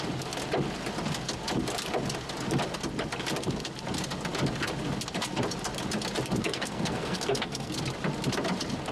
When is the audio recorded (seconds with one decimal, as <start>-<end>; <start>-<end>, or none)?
0.0-6.4; 7.8-8.9